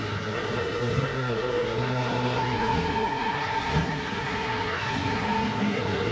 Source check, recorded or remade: remade